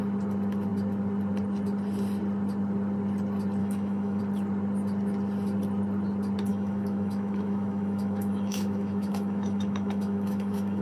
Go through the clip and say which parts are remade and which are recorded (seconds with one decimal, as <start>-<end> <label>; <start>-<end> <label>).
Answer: 0.0-3.6 recorded; 3.6-4.2 remade; 4.2-6.5 recorded; 6.5-10.8 remade